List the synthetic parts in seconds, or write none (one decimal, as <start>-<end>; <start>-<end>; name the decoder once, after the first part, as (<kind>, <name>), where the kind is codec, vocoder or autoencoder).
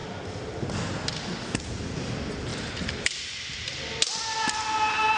2.5-3.8 (vocoder, BigVGAN v2)